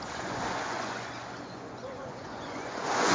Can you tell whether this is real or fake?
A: fake